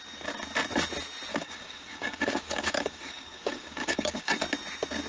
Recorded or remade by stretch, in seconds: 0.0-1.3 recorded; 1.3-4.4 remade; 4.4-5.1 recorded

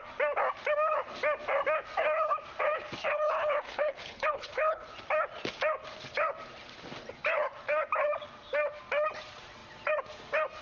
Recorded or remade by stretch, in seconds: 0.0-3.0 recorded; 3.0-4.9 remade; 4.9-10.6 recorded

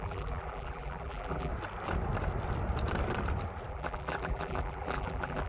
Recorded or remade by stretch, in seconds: 0.0-1.5 remade; 1.5-3.7 recorded; 3.7-5.5 remade

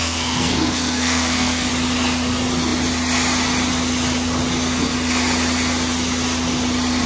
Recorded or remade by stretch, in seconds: 0.0-1.7 remade; 1.7-7.1 recorded

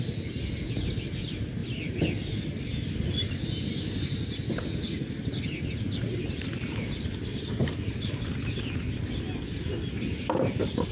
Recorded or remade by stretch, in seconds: 0.0-7.3 recorded; 7.3-7.9 remade; 7.9-10.9 recorded